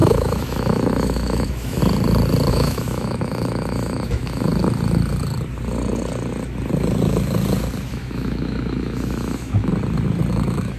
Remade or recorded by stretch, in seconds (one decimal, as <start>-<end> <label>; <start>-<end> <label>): 0.0-1.8 remade; 1.8-2.5 recorded; 2.5-4.5 remade; 4.5-7.9 recorded; 7.9-9.7 remade; 9.7-10.3 recorded; 10.3-10.8 remade